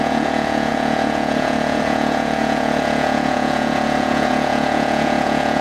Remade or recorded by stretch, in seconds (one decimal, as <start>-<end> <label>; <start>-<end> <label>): 0.0-5.6 remade